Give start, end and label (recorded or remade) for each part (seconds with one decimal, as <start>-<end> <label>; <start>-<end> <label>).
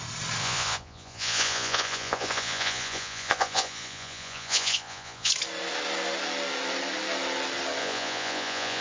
0.0-0.4 recorded; 0.4-5.3 remade; 5.3-7.8 recorded; 7.8-8.8 remade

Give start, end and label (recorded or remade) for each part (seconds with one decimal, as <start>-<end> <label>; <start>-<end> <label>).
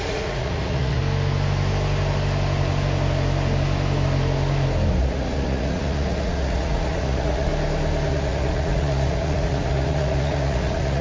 0.0-1.0 remade; 1.0-4.9 recorded; 4.9-7.5 remade; 7.5-8.1 recorded; 8.1-11.0 remade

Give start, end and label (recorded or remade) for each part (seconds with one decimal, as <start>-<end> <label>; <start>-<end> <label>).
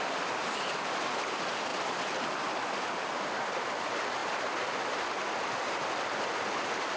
0.0-7.0 recorded